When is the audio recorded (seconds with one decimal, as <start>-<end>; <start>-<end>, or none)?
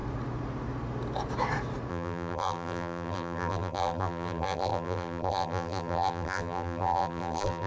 0.0-1.9